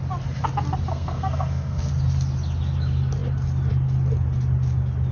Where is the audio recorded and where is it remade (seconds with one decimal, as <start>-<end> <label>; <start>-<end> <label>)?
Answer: 0.0-0.9 recorded; 0.9-1.9 remade; 1.9-5.1 recorded